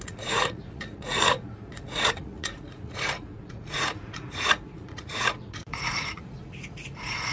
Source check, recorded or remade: remade